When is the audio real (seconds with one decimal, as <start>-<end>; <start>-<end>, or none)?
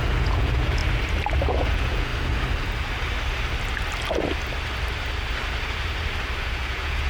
0.8-1.5; 2.1-6.4